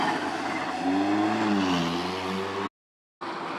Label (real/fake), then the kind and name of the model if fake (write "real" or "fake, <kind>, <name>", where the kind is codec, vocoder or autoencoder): real